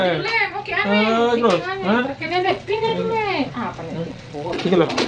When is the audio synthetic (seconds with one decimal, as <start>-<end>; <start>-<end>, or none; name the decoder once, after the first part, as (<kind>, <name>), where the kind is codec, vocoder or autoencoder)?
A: 2.0-2.9 (vocoder, Vocos); 4.1-5.1